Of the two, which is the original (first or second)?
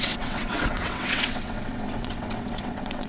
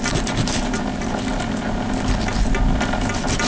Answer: second